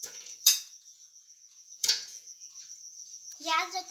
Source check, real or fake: fake